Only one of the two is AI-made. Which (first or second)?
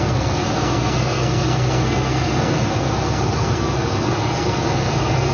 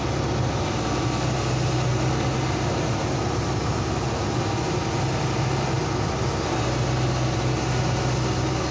first